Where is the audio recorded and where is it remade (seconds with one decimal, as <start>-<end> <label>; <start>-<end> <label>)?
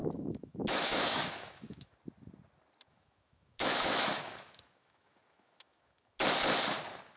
0.0-1.9 remade; 1.9-2.9 recorded; 2.9-6.2 remade; 6.2-7.2 recorded